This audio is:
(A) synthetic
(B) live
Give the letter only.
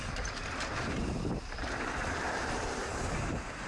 A